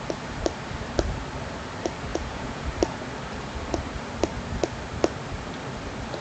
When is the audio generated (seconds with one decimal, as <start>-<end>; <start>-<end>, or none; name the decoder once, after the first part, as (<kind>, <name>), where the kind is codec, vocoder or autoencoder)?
2.1-2.7 (vocoder, Vocos)